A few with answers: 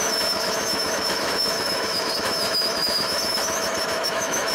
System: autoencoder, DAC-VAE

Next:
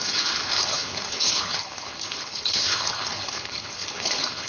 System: codec, HILCodec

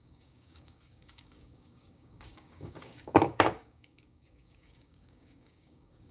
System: codec, DAC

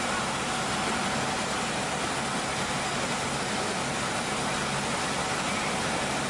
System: none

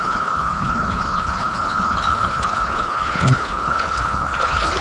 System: codec, HILCodec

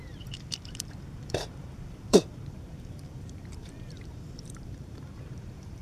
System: vocoder, BigVGAN v2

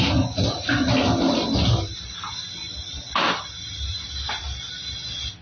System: none